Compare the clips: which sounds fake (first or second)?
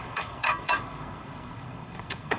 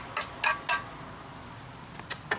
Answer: first